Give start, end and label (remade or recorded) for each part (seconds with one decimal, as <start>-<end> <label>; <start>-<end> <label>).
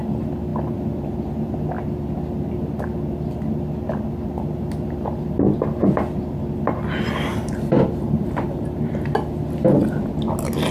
0.0-7.3 recorded; 7.3-8.9 remade; 8.9-10.7 recorded